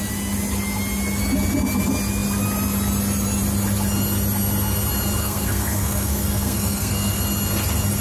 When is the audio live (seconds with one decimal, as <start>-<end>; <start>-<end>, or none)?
0.0-5.2; 7.2-8.0